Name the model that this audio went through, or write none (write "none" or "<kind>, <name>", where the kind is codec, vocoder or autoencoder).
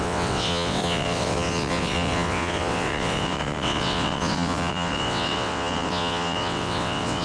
vocoder, WaveNeXt